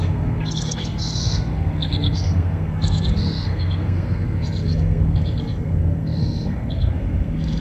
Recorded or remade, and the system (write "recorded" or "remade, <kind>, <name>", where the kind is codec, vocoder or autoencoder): remade, codec, SNAC